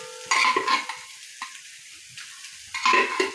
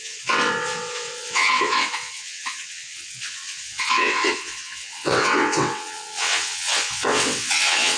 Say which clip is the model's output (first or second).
second